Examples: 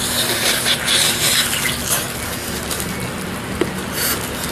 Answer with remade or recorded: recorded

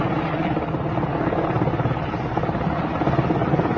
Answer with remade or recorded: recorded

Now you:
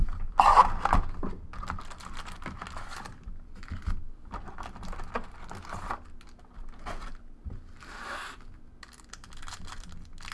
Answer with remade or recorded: recorded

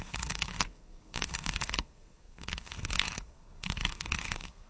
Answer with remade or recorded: remade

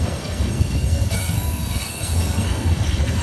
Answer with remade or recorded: remade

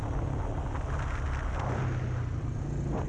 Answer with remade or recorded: recorded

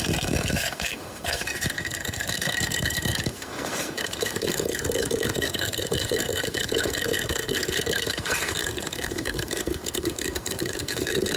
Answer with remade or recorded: remade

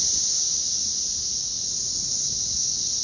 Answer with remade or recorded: recorded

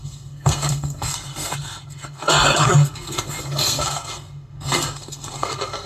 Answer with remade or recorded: remade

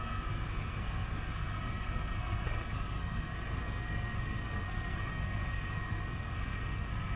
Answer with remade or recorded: remade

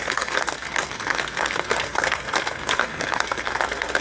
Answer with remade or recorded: remade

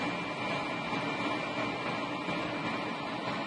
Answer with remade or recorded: recorded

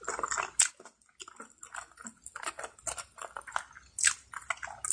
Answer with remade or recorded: recorded